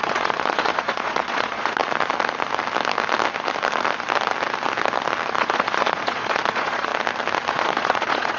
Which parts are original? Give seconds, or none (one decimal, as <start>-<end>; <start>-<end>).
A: 1.8-5.4; 6.9-7.5